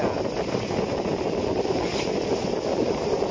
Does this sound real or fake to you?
real